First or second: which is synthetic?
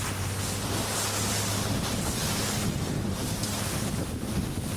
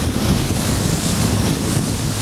second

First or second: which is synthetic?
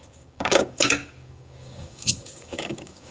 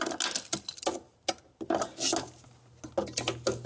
first